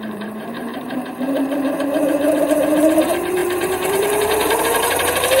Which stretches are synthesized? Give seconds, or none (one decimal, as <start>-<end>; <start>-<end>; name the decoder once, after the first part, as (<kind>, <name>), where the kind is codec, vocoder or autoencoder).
0.0-5.4 (vocoder, BigVGAN v2)